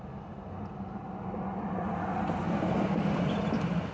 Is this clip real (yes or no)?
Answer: yes